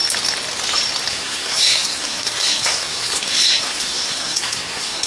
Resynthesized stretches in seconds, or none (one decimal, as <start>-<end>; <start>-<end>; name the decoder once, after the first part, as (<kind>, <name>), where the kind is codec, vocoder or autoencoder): 1.1-5.1 (codec, SNAC)